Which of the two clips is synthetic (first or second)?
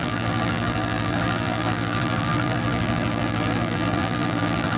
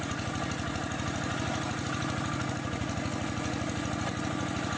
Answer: first